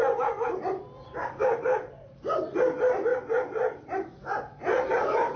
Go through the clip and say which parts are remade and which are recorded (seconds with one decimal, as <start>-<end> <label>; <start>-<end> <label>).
0.0-1.2 recorded; 1.2-2.3 remade; 2.3-3.1 recorded; 3.1-5.4 remade